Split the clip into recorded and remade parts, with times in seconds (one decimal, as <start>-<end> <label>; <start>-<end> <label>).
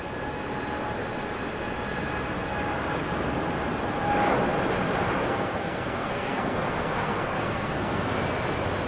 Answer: 0.0-5.2 recorded; 5.2-8.1 remade; 8.1-8.9 recorded